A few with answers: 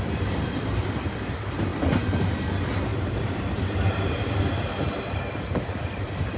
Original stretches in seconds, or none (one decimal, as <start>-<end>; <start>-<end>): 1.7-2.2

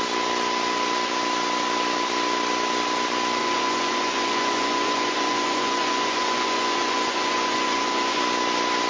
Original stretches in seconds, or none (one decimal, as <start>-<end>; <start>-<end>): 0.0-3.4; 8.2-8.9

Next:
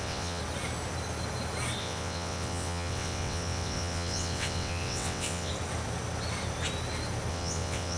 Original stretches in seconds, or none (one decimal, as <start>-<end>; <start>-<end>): 0.4-1.8; 5.5-7.3

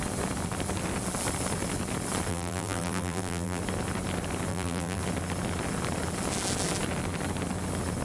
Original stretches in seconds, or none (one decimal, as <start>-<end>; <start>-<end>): 0.0-2.3; 3.6-4.5; 5.0-8.0

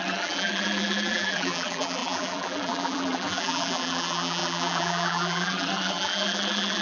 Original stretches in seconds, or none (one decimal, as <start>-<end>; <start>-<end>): none

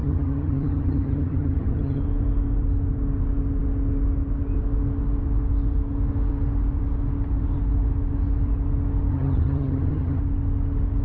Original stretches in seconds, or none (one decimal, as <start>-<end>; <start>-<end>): 2.0-9.1; 10.2-11.0

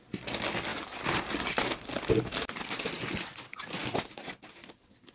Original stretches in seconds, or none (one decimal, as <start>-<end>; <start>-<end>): 0.0-0.7; 1.7-5.1